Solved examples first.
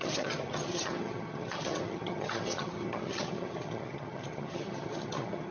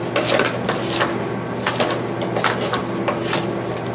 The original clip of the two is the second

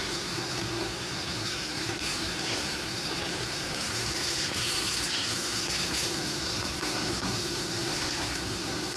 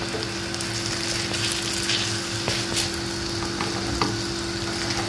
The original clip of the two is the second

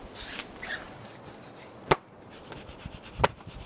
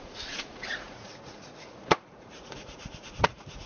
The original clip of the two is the first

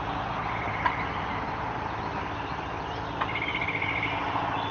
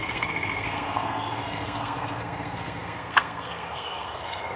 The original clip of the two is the first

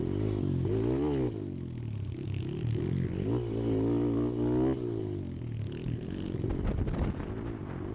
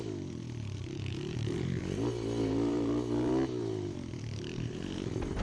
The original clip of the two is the first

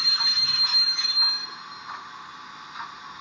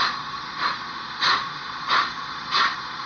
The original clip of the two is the first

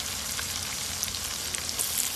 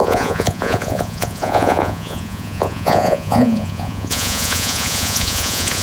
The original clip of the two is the first